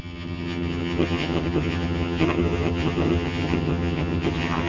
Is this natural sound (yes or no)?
no